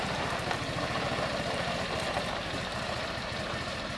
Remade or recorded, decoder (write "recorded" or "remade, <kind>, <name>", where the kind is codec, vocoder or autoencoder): remade, vocoder, BigVGAN v2